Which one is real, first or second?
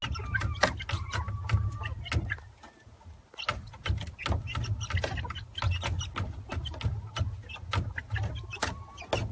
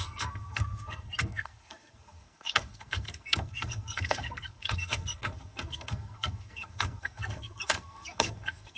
first